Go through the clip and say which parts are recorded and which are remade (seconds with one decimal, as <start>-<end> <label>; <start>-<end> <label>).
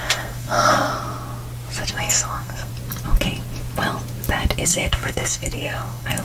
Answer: 0.0-0.9 remade; 0.9-1.9 recorded; 1.9-2.7 remade; 2.7-4.6 recorded; 4.6-6.2 remade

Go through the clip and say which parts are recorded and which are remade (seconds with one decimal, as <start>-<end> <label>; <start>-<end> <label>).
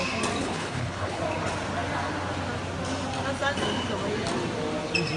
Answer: 0.0-0.4 recorded; 0.4-1.2 remade; 1.2-5.2 recorded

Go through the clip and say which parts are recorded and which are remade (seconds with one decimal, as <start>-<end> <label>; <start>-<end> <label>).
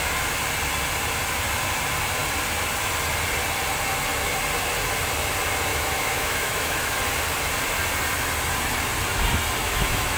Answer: 0.0-5.7 recorded; 5.7-6.9 remade; 6.9-9.6 recorded; 9.6-10.2 remade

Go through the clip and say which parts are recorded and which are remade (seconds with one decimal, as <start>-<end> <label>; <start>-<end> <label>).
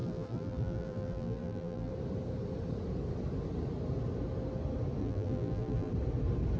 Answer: 0.0-1.9 remade; 1.9-5.0 recorded; 5.0-5.9 remade; 5.9-6.6 recorded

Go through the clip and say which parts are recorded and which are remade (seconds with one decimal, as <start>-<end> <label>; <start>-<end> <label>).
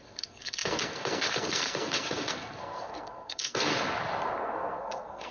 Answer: 0.0-3.7 remade; 3.7-4.4 recorded; 4.4-5.3 remade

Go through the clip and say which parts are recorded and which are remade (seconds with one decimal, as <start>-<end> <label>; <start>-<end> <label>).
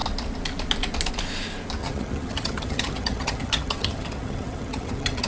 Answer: 0.0-1.8 recorded; 1.8-5.3 remade